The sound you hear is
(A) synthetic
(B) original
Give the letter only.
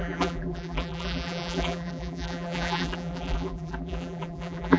A